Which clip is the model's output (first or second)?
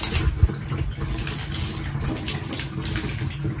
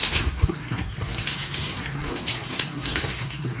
second